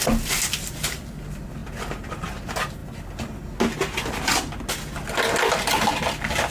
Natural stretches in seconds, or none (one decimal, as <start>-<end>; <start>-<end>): 0.0-6.5